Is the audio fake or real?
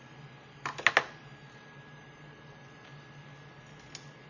real